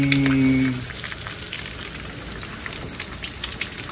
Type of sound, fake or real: real